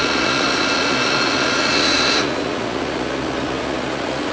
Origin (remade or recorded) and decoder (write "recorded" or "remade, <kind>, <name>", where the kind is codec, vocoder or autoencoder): remade, vocoder, Vocos